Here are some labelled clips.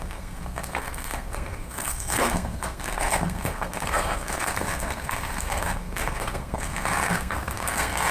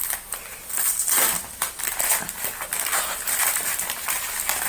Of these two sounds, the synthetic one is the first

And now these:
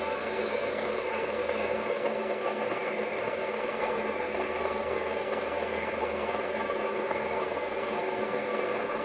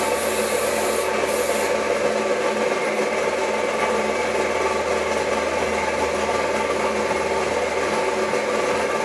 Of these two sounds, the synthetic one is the first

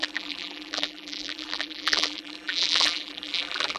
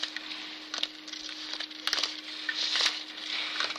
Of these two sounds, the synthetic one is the first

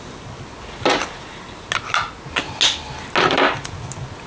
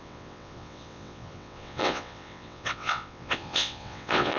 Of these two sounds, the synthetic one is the second